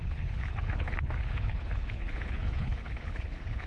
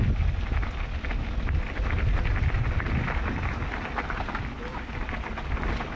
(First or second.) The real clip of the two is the second